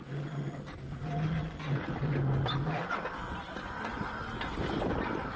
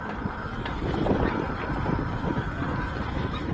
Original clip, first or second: first